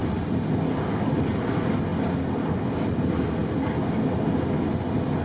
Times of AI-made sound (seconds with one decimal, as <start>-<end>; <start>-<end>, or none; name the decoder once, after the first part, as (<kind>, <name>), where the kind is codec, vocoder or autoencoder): 0.0-1.5 (vocoder, BigVGAN v2)